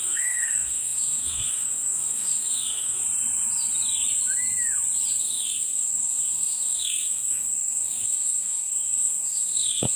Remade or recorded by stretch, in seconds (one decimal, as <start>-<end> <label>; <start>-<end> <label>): 0.0-3.0 remade; 3.0-5.2 recorded; 5.2-10.0 remade